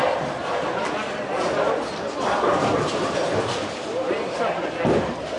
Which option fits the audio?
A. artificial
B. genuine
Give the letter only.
B